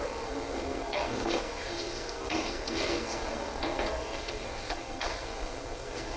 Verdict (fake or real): fake